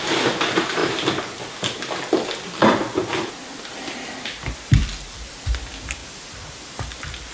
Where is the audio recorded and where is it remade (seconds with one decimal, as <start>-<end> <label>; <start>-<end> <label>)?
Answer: 0.0-7.3 recorded